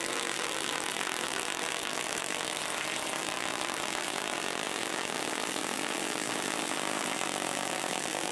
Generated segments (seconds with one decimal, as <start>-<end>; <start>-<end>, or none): 0.0-2.6; 3.2-8.3